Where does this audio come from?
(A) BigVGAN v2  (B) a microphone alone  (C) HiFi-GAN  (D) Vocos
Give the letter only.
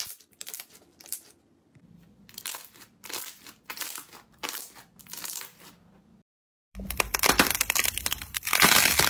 A